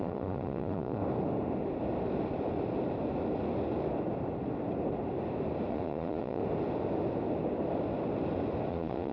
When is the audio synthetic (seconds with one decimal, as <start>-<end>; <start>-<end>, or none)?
0.0-1.0; 5.7-6.4; 8.7-9.1